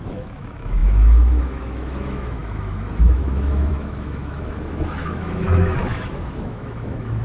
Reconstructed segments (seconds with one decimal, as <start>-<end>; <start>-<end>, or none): 0.0-7.2